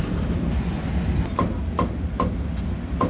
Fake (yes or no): no